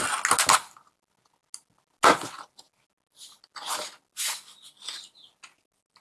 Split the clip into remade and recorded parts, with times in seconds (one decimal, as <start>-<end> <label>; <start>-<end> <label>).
0.0-6.0 recorded